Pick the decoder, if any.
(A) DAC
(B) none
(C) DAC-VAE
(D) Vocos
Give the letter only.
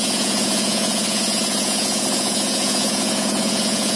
D